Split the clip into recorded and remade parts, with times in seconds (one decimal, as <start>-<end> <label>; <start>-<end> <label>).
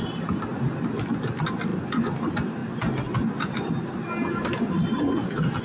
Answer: 0.0-0.5 remade; 0.5-1.1 recorded; 1.1-2.6 remade; 2.6-4.3 recorded; 4.3-5.6 remade